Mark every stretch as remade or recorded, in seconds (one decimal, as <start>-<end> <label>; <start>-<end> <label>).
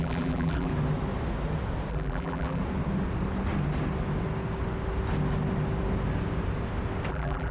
0.0-0.7 remade; 0.7-1.9 recorded; 1.9-2.6 remade; 2.6-7.1 recorded; 7.1-7.5 remade